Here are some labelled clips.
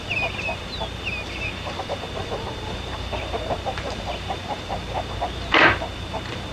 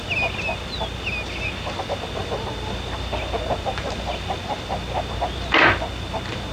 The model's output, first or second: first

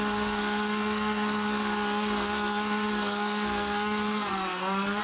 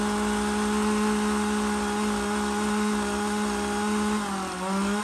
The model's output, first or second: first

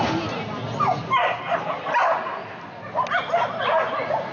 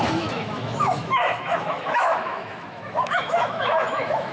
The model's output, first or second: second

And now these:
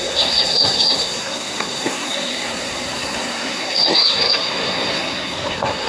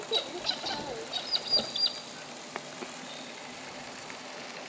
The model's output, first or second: first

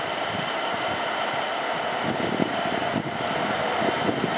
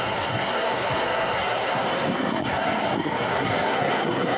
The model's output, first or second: second